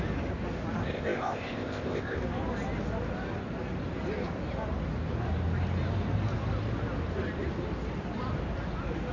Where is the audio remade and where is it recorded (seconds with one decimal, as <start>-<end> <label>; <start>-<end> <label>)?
0.0-0.8 recorded; 0.8-2.2 remade; 2.2-9.1 recorded